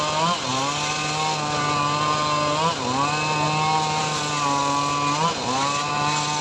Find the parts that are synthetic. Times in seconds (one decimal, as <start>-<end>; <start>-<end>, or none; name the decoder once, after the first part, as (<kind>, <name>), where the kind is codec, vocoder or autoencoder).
none